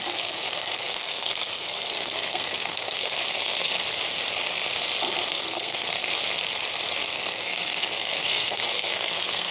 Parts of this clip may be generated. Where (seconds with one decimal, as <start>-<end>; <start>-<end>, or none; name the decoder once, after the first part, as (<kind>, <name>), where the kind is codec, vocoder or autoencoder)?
0.0-3.7 (codec, SNAC); 5.3-6.1; 7.0-9.5